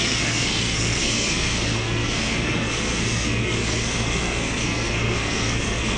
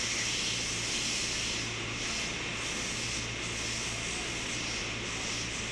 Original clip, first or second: second